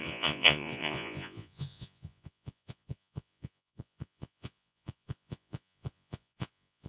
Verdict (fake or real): fake